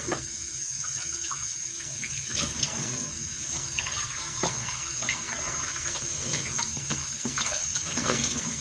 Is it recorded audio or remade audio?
remade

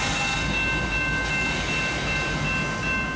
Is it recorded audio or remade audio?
recorded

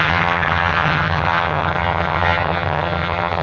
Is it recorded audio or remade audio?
remade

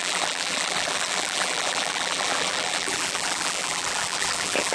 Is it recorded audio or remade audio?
remade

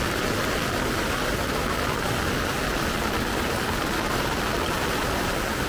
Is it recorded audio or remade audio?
recorded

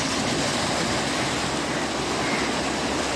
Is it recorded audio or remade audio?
recorded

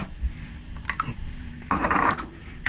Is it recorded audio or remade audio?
remade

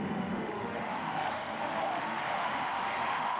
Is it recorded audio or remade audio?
remade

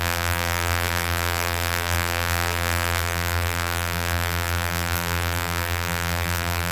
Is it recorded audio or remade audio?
remade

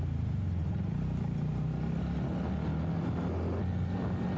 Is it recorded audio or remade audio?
recorded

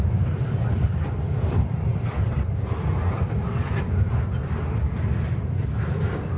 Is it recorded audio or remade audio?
recorded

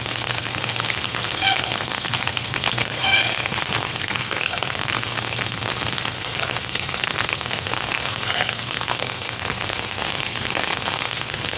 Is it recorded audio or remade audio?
remade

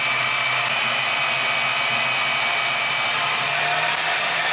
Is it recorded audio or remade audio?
recorded